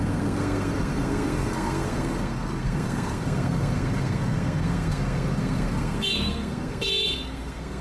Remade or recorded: remade